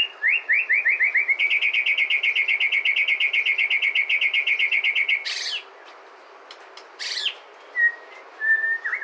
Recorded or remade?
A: recorded